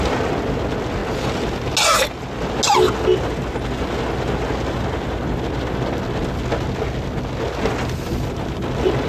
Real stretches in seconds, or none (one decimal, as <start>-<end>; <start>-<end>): 0.0-9.1